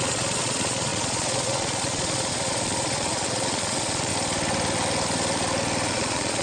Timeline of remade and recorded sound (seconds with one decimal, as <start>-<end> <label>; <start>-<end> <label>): 0.0-4.1 remade; 4.1-5.9 recorded; 5.9-6.4 remade